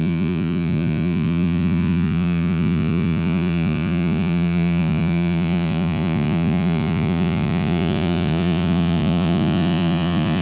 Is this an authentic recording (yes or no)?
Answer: no